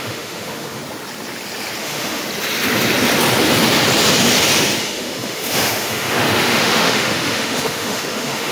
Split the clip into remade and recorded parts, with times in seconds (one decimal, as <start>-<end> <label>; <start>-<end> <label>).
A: 0.0-0.8 remade; 0.8-1.8 recorded; 1.8-2.2 remade; 2.2-4.8 recorded; 4.8-8.5 remade